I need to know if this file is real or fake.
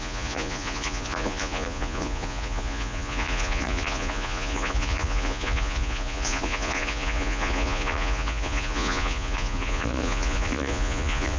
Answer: fake